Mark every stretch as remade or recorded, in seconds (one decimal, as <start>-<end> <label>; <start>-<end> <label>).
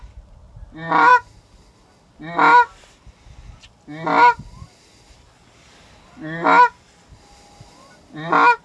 0.0-8.6 recorded